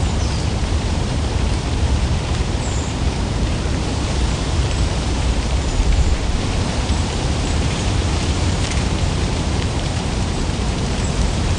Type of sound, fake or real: fake